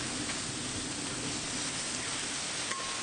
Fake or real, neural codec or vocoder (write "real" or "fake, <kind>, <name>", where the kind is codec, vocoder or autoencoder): real